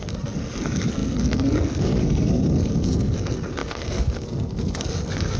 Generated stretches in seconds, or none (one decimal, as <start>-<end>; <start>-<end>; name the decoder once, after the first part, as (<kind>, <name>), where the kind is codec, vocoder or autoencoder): 0.0-5.4 (codec, SNAC)